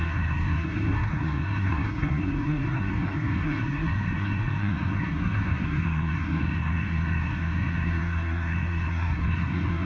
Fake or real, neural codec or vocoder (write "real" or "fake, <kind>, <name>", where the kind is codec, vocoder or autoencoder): fake, codec, SNAC